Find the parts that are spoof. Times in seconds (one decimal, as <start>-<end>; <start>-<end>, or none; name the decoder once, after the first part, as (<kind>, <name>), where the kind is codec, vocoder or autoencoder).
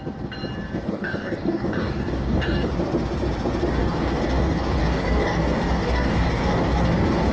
0.9-2.7 (codec, DAC); 3.8-7.3